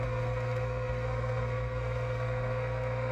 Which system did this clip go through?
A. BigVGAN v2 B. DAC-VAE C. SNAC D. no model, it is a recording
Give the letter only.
C